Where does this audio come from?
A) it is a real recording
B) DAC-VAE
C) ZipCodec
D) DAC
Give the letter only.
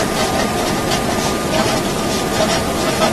A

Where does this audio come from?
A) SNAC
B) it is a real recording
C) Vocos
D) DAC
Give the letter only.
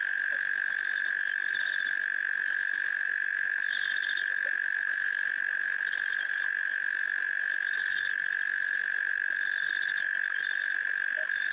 B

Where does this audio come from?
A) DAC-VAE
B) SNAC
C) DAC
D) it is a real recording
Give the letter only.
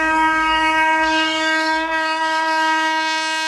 C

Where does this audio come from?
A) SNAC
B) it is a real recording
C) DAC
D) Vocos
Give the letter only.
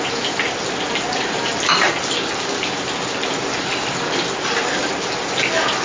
B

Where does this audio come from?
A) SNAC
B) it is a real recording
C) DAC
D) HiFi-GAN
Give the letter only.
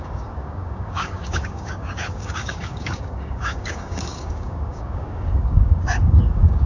C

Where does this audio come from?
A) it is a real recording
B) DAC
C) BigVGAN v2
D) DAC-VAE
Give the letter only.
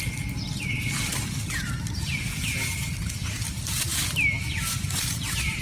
A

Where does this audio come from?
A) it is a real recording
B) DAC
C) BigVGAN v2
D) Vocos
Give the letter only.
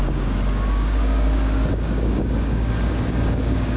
B